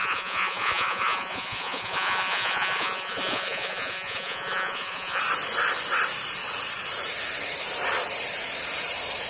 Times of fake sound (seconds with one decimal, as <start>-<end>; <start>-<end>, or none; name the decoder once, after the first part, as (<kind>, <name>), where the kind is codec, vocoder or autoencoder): 0.0-5.2 (vocoder, Vocos)